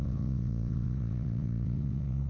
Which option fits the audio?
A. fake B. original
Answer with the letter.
A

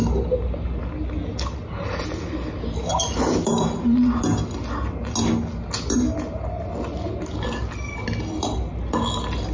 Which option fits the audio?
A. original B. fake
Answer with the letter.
A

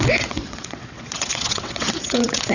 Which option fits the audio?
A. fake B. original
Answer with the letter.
A